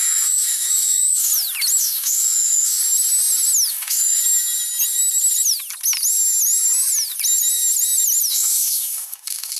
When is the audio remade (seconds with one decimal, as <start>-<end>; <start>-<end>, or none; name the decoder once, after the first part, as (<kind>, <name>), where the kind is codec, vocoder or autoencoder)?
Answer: 0.0-1.3 (autoencoder, DAC-VAE); 1.8-2.8; 3.7-4.2; 8.3-9.6